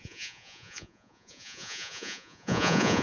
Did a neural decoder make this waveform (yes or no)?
yes